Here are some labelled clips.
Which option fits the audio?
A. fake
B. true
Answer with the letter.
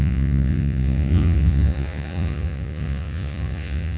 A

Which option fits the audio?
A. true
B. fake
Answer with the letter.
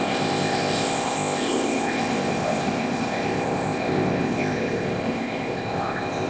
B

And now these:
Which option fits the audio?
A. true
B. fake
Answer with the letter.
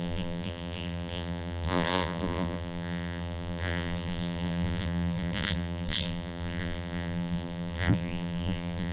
B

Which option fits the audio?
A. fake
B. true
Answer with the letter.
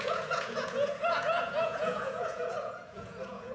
A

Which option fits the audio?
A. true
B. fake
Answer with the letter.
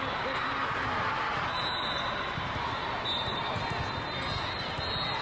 A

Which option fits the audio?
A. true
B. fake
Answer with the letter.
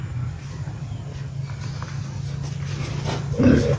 A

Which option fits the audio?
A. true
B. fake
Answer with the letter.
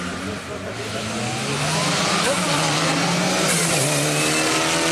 A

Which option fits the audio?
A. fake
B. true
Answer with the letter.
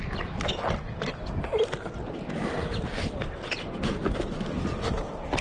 B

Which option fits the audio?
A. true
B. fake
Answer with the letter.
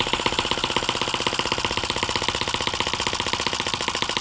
A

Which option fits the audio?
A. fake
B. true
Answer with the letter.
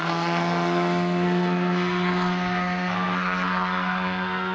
A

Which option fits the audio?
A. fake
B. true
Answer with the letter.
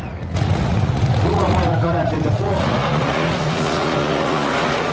A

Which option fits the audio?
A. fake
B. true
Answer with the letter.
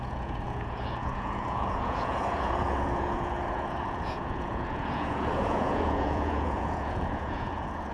A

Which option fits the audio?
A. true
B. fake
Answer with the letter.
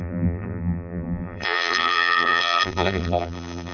B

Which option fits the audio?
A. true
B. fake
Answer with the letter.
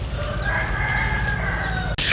A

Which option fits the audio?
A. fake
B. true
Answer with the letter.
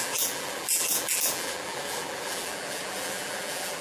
A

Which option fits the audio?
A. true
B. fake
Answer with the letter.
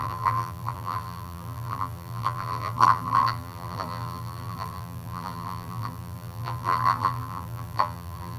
B